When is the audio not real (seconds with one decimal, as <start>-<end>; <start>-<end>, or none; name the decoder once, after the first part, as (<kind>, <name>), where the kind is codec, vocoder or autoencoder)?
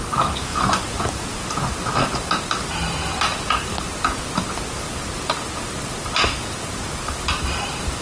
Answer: 0.5-1.0 (vocoder, Vocos)